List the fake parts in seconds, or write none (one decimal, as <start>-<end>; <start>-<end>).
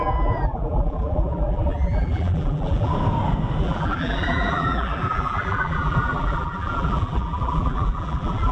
0.0-2.9; 3.6-8.5